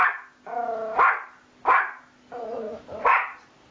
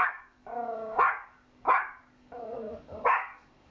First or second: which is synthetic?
second